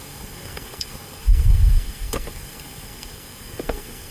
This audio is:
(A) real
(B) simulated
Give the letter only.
B